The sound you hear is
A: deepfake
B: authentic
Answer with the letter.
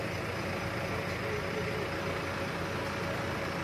B